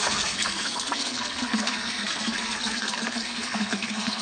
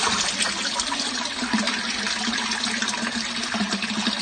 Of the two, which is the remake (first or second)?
first